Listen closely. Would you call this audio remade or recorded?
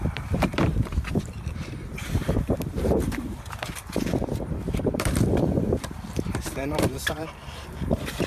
remade